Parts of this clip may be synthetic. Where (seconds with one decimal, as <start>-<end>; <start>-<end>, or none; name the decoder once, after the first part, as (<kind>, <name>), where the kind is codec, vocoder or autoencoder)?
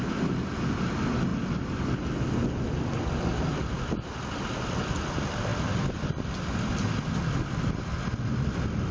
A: none